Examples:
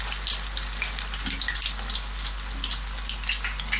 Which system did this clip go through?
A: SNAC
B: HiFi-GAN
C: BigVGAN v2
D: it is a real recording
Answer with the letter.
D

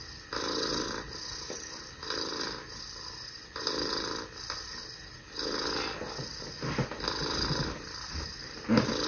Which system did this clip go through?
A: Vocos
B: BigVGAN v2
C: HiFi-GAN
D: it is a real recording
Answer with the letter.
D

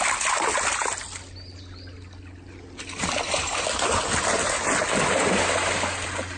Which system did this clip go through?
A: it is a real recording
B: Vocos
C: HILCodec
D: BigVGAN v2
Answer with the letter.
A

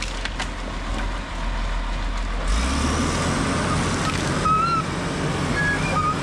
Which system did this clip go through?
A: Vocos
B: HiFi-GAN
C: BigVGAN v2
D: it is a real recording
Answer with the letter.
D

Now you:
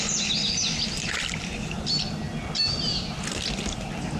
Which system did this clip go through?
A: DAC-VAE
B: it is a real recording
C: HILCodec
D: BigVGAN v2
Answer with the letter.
B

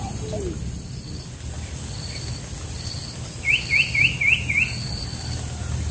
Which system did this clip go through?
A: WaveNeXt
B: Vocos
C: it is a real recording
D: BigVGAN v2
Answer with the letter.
C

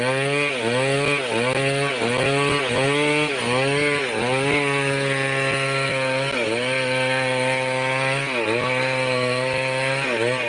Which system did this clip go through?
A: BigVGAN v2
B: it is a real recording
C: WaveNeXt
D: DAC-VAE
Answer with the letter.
B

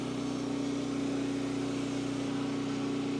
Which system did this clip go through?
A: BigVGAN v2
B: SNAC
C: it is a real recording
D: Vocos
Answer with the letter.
C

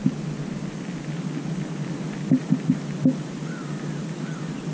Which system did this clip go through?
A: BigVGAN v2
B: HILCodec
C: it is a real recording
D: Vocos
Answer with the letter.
C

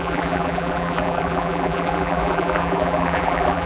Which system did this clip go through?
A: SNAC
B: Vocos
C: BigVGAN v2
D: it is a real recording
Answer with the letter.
C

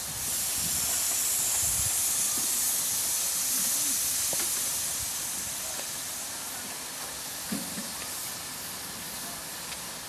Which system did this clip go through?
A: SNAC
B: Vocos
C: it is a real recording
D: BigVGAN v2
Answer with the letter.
C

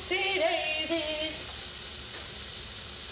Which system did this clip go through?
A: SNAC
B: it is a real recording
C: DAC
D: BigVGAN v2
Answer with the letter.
B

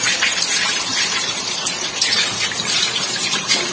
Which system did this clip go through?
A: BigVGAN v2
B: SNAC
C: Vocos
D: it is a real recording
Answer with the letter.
A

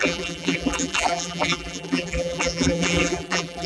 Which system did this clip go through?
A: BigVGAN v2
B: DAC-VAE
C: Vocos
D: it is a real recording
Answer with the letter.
A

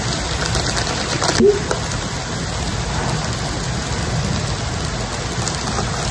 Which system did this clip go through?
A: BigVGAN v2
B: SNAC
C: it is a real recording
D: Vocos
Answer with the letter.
C